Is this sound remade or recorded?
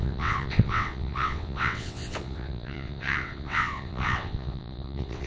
remade